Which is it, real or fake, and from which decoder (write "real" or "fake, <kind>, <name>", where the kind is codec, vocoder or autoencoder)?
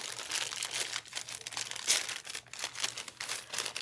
real